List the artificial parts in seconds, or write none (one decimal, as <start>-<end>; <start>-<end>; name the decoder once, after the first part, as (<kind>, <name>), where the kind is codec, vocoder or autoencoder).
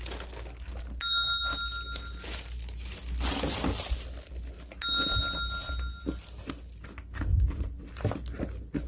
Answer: none